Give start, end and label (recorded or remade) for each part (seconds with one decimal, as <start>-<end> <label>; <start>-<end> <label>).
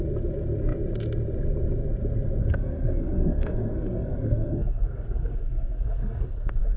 0.0-2.4 recorded; 2.4-6.8 remade